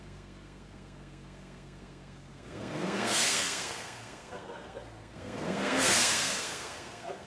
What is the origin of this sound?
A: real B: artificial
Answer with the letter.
B